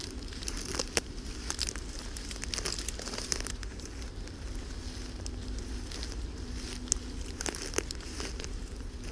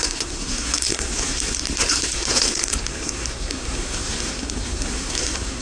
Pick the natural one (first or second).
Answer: first